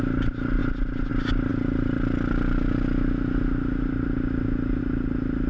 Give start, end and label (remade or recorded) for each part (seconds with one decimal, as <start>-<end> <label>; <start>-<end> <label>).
0.0-5.5 recorded